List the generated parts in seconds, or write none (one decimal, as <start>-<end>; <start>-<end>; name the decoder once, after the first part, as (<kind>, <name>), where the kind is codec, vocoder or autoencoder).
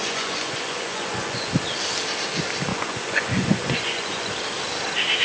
0.0-1.5 (vocoder, Vocos); 2.7-4.3